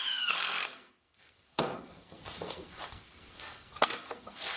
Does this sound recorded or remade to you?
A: remade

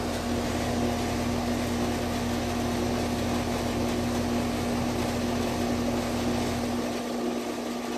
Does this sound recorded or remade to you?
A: recorded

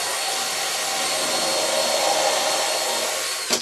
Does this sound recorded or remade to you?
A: recorded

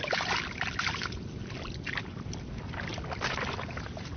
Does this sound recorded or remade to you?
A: recorded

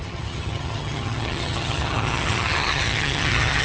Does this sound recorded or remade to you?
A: remade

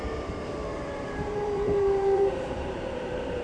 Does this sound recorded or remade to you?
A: remade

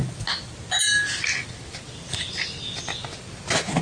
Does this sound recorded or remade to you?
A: recorded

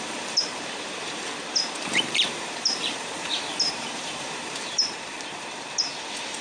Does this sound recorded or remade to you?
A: remade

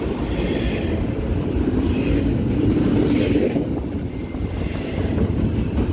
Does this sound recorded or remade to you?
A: recorded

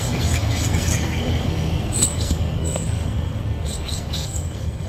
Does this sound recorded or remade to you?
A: remade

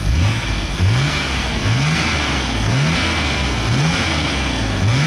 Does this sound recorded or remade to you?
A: remade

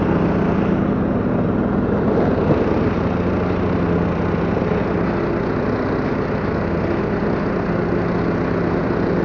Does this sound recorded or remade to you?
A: recorded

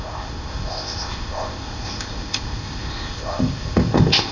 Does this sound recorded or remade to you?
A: remade